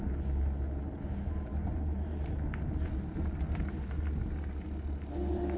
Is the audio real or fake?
real